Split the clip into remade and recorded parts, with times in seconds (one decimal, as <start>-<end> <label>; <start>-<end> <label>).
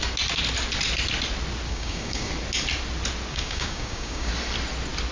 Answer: 0.0-1.7 recorded; 1.7-2.3 remade; 2.3-3.3 recorded; 3.3-4.3 remade; 4.3-5.1 recorded